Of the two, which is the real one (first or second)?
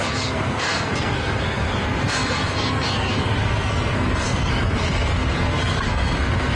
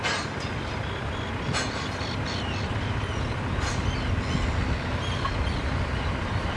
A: second